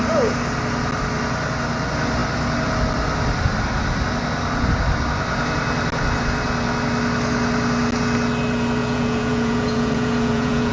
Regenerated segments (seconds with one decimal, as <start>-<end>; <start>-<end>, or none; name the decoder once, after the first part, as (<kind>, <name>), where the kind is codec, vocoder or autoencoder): 8.8-10.7 (vocoder, Vocos)